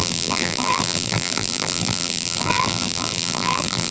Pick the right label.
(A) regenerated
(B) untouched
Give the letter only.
A